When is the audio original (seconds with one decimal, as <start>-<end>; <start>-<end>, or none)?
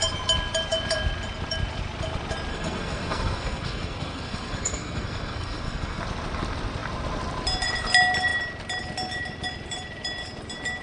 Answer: 0.0-2.5; 6.0-10.8